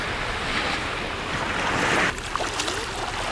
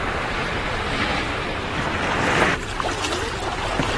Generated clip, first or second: second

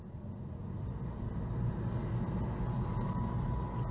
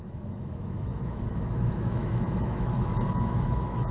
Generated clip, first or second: second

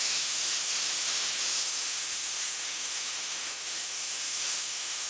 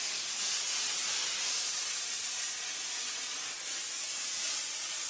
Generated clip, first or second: first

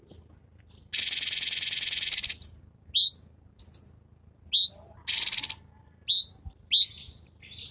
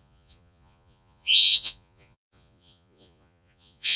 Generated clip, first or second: second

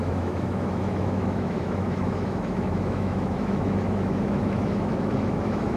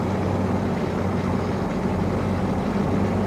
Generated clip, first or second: first